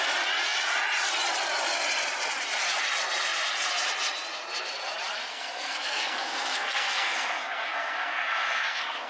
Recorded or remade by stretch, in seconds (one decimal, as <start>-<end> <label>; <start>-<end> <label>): 0.0-5.3 recorded; 5.3-9.1 remade